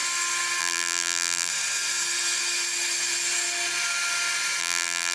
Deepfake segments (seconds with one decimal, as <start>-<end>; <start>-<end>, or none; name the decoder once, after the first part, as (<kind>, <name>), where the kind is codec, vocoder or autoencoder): 0.6-1.5 (vocoder, BigVGAN v2); 4.6-5.1